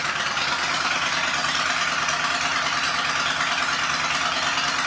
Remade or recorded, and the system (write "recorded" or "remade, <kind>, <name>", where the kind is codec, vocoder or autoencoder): recorded